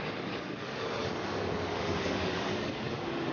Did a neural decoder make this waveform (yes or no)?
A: yes